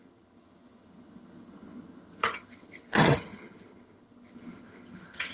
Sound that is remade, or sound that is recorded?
remade